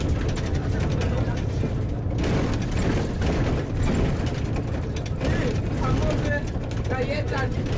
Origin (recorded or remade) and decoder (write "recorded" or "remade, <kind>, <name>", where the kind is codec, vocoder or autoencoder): recorded